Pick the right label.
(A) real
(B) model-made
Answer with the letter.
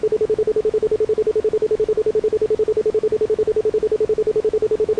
B